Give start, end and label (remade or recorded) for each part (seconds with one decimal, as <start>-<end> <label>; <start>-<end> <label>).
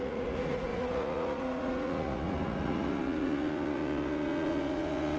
0.0-5.2 remade